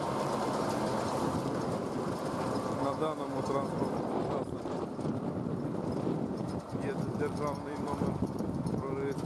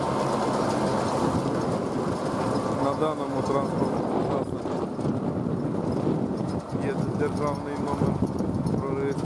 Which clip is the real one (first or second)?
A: second